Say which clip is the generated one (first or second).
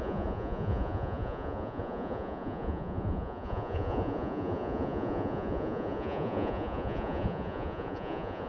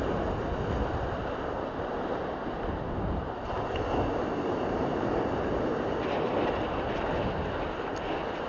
first